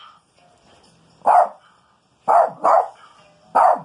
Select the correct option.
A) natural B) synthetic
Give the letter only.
B